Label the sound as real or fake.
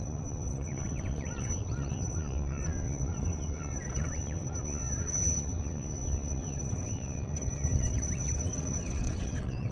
fake